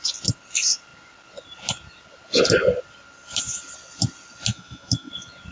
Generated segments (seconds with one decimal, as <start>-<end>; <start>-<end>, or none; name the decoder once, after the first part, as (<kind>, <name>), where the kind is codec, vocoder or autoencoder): 4.5-5.1 (autoencoder, DAC-VAE)